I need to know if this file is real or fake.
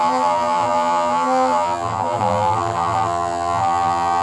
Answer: fake